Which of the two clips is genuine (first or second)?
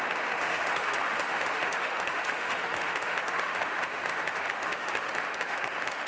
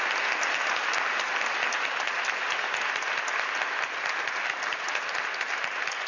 second